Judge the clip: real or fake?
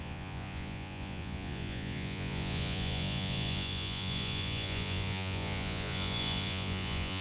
fake